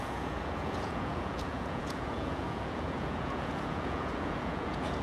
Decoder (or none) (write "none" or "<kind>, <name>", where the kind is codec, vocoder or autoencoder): vocoder, Vocos